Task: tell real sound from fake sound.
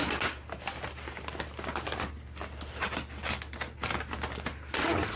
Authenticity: real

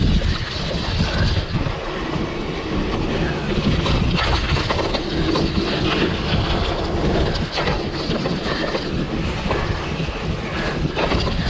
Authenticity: real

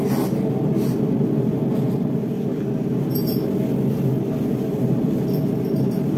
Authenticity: real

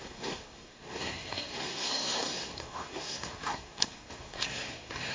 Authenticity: fake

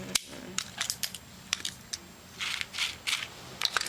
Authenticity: real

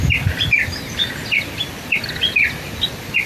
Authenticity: real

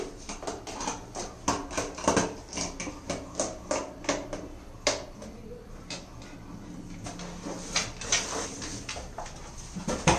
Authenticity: real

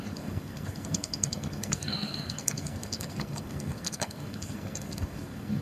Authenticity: fake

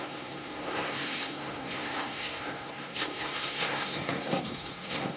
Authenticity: fake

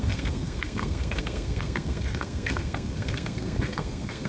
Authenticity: fake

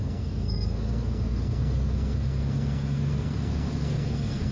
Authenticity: fake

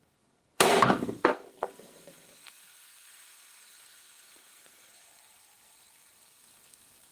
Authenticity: fake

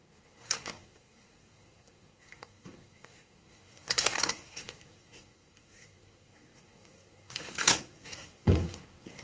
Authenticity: fake